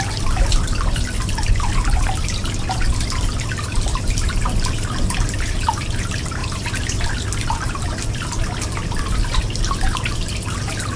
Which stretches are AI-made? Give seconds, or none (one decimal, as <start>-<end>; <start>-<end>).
none